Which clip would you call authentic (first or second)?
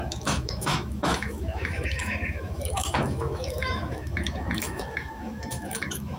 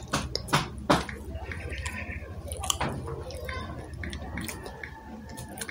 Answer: second